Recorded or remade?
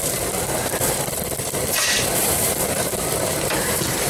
remade